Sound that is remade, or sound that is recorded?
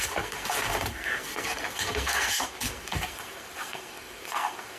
remade